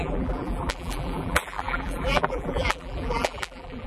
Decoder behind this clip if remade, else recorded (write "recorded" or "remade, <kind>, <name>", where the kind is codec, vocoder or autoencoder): remade, vocoder, BigVGAN v2